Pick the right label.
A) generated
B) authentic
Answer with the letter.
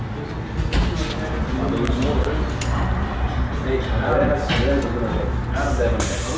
B